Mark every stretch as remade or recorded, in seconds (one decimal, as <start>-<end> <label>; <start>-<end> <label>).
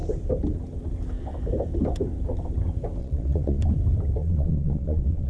0.0-3.0 recorded; 3.0-3.7 remade; 3.7-4.2 recorded; 4.2-5.3 remade